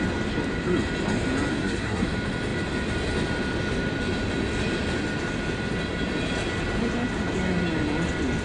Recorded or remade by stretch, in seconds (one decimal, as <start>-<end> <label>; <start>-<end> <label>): 0.0-1.5 recorded; 1.5-2.1 remade; 2.1-8.4 recorded